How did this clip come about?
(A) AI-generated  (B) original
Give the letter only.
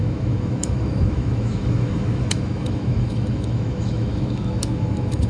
A